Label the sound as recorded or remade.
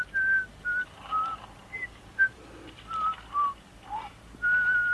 remade